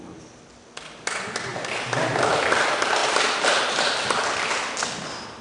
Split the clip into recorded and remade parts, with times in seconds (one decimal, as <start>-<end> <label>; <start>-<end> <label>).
0.0-5.4 recorded